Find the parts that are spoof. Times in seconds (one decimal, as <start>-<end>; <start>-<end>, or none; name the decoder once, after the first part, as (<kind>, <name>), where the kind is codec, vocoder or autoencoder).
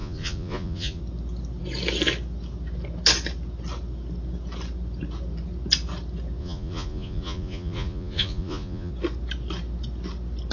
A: 0.0-1.0 (vocoder, Vocos); 6.4-8.9